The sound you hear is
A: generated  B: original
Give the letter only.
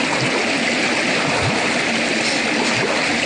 B